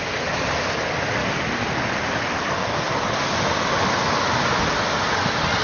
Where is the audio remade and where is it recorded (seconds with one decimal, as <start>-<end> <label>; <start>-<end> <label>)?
0.0-5.6 recorded